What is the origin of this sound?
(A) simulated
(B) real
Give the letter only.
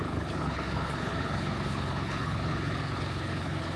A